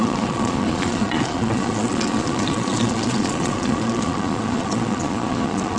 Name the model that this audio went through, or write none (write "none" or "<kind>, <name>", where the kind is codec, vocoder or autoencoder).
vocoder, Vocos